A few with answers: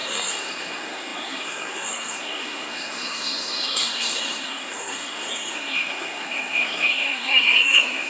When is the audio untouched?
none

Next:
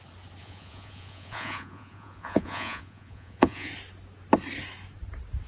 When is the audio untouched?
0.0-0.4; 3.7-5.5

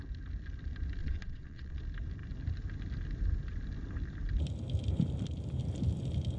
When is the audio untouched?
0.0-1.0; 1.8-6.4

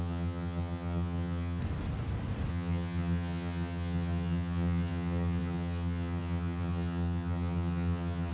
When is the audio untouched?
1.6-2.5

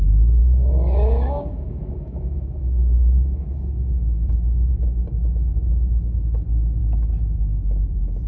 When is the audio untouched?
6.8-8.3

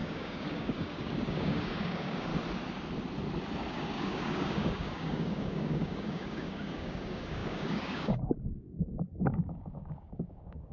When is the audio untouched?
2.3-3.7

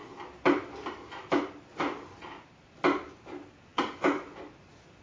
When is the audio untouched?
0.0-5.0